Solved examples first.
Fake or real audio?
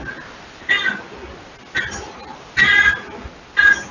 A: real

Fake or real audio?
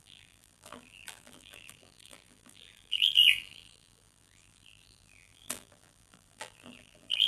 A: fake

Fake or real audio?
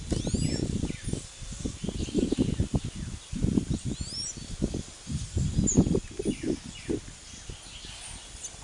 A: real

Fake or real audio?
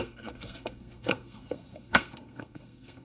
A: fake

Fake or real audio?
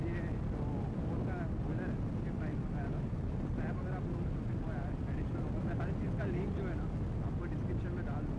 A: real